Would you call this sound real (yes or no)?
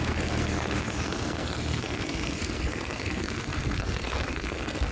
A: no